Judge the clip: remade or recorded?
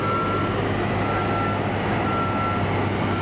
recorded